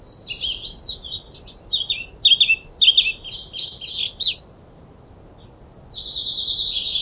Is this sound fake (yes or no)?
no